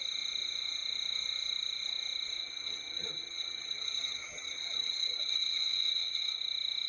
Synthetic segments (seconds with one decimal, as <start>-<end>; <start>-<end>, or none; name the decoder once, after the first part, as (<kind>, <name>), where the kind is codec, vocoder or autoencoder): 2.4-6.4 (vocoder, HiFi-GAN)